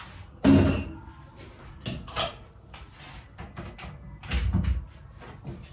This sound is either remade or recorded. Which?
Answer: recorded